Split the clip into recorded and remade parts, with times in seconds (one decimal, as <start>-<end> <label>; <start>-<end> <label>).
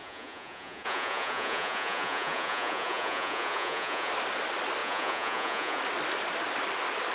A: 0.0-4.1 remade; 4.1-4.8 recorded; 4.8-5.8 remade; 5.8-7.1 recorded